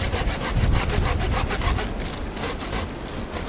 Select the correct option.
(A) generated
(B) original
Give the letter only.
B